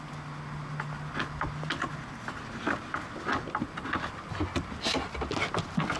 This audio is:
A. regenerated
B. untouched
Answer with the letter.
B